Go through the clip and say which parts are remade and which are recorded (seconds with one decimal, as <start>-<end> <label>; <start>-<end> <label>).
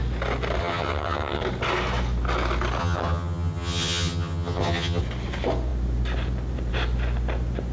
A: 0.0-0.6 recorded; 0.6-1.4 remade; 1.4-2.8 recorded; 2.8-5.0 remade; 5.0-7.7 recorded